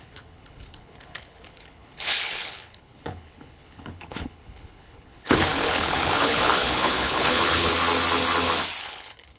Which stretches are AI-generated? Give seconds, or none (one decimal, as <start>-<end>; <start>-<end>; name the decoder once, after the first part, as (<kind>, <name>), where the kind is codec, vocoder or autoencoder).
0.0-7.7 (codec, HILCodec); 8.8-9.4